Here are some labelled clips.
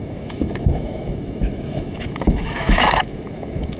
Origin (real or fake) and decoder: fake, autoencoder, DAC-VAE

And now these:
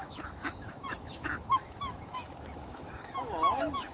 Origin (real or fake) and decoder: fake, autoencoder, DAC-VAE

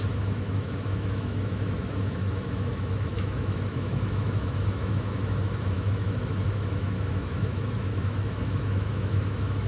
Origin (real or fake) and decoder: fake, autoencoder, DAC-VAE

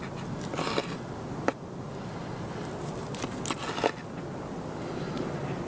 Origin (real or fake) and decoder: real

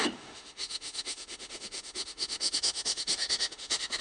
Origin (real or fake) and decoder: fake, autoencoder, DAC-VAE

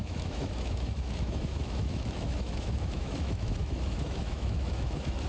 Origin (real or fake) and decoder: fake, autoencoder, DAC-VAE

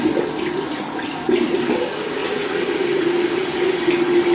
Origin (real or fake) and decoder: real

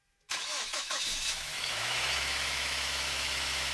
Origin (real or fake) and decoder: fake, autoencoder, DAC-VAE